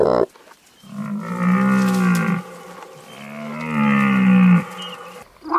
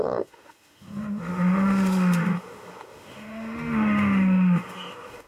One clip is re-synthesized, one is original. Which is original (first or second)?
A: first